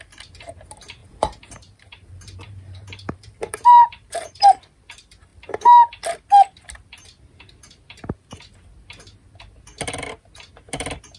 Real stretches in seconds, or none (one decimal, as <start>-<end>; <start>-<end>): 0.0-1.0; 4.6-11.2